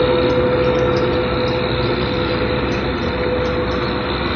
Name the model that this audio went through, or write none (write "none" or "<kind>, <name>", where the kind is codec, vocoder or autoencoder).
none